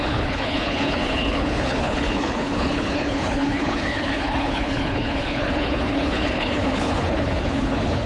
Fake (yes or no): yes